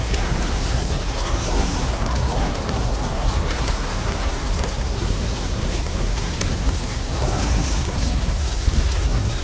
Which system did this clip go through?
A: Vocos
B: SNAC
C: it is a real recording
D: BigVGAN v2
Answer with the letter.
B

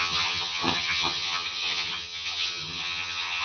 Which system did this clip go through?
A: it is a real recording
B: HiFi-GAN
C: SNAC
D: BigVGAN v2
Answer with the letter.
B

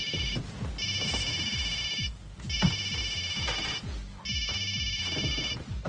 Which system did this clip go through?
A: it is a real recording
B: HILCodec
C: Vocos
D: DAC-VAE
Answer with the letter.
A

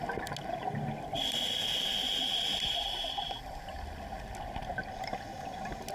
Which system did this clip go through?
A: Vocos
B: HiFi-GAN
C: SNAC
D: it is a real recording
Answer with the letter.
D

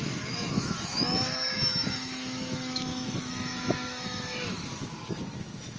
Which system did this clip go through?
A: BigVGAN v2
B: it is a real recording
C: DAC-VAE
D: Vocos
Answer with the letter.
C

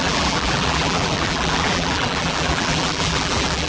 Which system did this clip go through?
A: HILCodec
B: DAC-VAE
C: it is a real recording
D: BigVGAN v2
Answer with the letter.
D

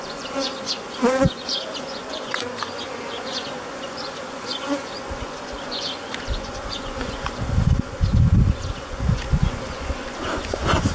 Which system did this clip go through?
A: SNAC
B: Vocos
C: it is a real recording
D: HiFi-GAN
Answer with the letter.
B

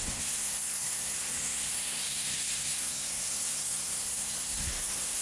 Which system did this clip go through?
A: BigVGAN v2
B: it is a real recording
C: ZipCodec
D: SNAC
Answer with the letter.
D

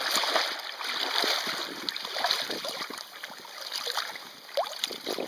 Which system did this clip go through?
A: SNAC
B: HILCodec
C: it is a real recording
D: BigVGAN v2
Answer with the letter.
C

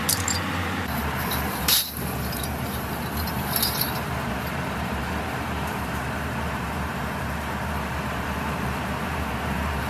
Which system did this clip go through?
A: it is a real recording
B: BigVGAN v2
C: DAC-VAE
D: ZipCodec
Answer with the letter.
B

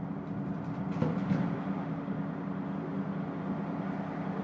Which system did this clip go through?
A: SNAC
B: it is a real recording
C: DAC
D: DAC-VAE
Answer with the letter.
B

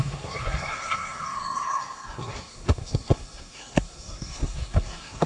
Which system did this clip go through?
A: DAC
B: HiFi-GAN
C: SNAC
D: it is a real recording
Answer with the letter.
C